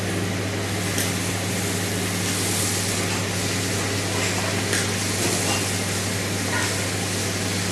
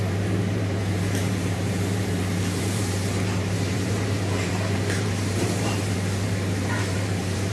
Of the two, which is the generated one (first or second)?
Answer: second